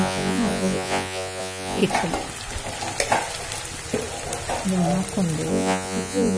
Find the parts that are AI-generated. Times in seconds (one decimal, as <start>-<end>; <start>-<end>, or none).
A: 0.0-1.8; 5.5-6.4